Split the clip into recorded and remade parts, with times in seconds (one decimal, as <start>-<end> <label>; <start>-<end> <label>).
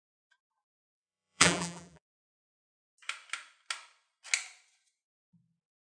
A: 0.0-2.9 remade; 2.9-5.8 recorded